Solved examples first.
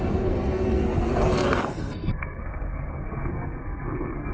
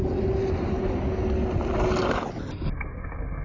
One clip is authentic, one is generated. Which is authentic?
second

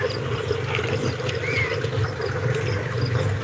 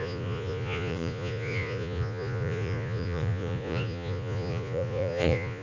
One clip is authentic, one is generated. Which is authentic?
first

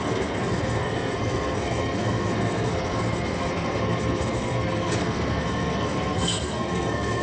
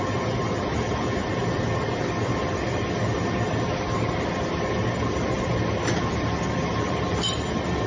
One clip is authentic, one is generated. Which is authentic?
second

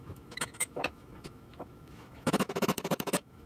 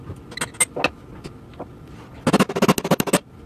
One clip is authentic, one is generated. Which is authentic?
second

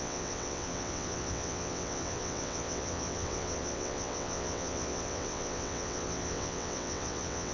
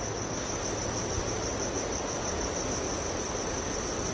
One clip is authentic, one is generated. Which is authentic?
second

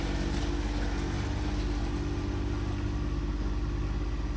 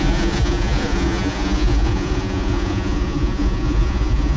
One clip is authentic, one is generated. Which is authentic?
first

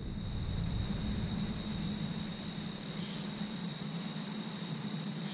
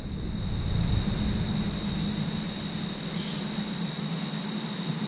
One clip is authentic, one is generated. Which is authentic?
second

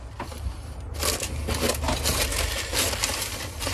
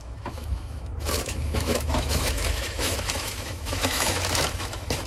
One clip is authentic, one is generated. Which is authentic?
first